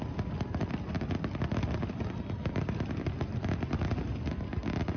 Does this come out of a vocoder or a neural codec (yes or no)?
no